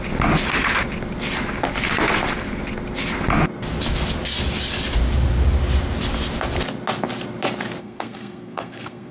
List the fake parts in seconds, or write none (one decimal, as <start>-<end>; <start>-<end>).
7.8-9.1